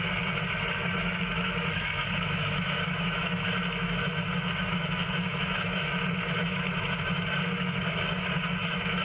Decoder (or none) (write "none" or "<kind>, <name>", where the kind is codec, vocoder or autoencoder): autoencoder, DAC-VAE